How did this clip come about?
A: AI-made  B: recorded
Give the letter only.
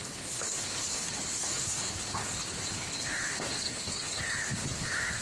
A